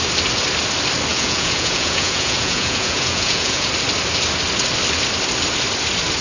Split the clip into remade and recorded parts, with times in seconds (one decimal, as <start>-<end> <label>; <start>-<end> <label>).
0.0-1.1 recorded; 1.1-3.7 remade; 3.7-6.2 recorded